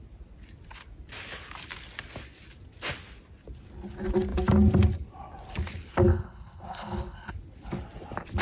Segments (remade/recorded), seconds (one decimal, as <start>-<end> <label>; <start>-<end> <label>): 0.0-6.1 recorded; 6.1-7.3 remade; 7.3-8.4 recorded